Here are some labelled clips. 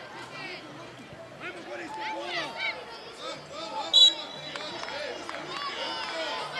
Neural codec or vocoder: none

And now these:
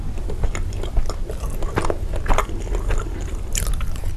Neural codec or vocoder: none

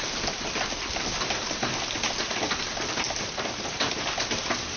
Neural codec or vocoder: none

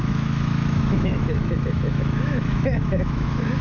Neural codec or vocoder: autoencoder, DAC-VAE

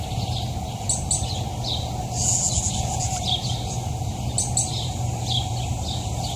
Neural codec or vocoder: none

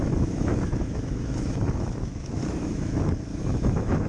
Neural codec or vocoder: autoencoder, DAC-VAE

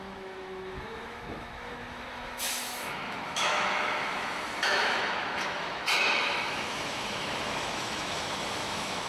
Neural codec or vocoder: autoencoder, DAC-VAE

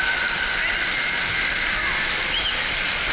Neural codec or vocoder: none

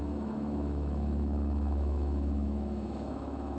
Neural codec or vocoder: autoencoder, DAC-VAE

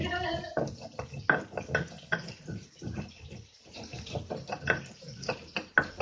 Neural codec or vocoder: none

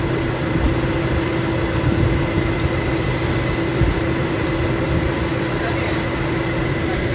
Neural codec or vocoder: none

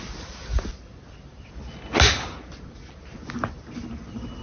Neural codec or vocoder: none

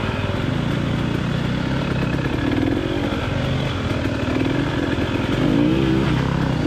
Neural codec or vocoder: none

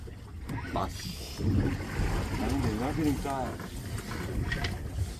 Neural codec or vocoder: none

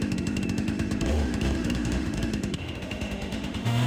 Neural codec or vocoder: autoencoder, DAC-VAE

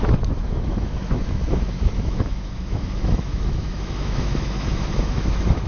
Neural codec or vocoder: autoencoder, DAC-VAE